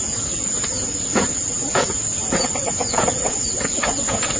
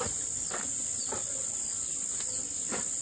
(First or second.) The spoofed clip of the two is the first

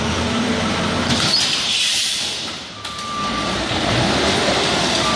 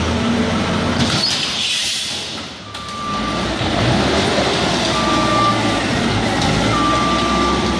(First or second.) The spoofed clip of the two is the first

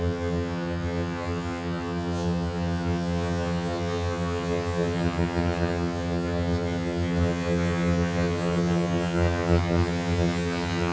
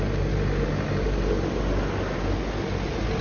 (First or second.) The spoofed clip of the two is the first